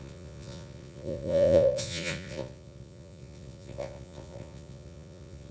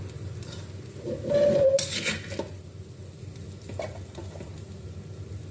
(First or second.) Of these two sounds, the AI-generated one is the first